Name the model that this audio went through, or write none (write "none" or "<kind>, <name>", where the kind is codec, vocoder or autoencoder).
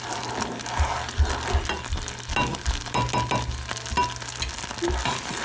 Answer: none